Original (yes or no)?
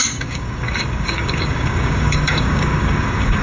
no